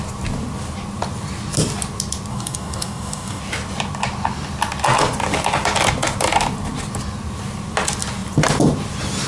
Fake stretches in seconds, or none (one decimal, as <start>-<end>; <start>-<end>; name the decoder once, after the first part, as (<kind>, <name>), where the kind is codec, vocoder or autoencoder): 2.3-3.4 (codec, DAC)